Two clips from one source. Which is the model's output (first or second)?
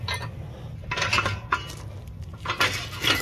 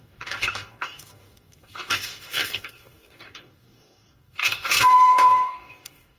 second